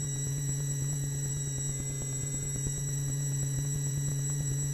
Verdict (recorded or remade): remade